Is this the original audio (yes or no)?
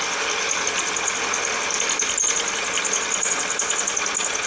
yes